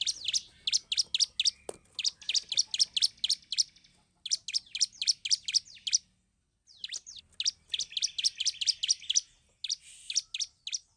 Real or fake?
real